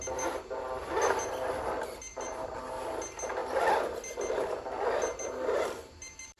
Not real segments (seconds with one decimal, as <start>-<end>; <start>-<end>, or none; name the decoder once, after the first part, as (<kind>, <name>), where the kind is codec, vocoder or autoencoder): none